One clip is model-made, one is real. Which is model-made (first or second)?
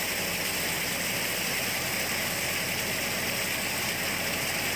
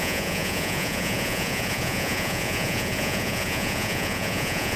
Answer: second